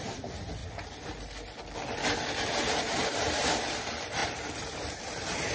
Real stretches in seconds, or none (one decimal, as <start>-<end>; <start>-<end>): 0.6-2.6